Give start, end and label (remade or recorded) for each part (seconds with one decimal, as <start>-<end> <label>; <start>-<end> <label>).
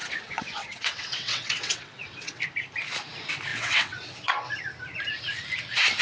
0.0-2.4 remade; 2.4-3.5 recorded; 3.5-4.5 remade; 4.5-6.0 recorded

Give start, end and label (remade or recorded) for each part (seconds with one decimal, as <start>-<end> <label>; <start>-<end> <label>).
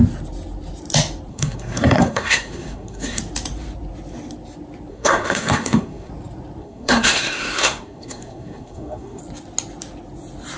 0.0-1.3 recorded; 1.3-3.2 remade; 3.2-4.9 recorded; 4.9-6.1 remade; 6.1-6.6 recorded; 6.6-9.2 remade; 9.2-10.6 recorded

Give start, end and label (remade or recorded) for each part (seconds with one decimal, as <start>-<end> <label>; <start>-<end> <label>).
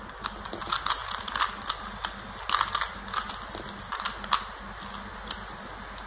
0.0-6.1 recorded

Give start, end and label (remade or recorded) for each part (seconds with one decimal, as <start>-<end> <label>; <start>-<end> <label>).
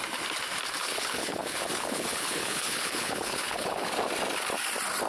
0.0-0.8 recorded; 0.8-3.9 remade; 3.9-5.1 recorded